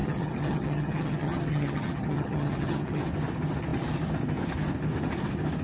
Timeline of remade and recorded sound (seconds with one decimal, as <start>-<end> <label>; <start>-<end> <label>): 0.0-3.0 remade; 3.0-5.6 recorded